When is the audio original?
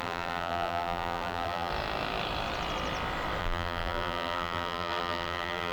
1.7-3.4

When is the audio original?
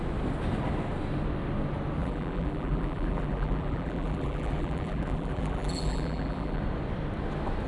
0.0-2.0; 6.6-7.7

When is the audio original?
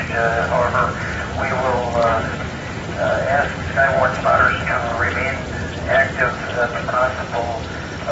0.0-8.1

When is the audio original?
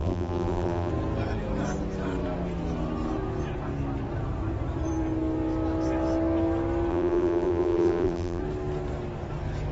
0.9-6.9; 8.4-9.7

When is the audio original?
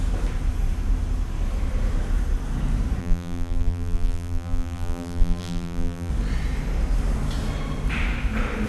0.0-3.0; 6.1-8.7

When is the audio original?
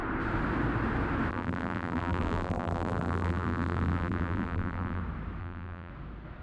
0.0-1.3; 5.0-5.4; 5.9-6.4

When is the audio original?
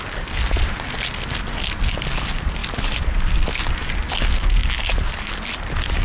0.0-2.6; 3.3-6.0